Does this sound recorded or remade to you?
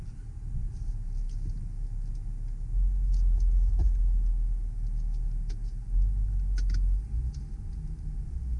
recorded